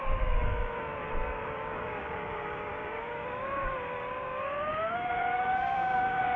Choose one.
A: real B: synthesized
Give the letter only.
B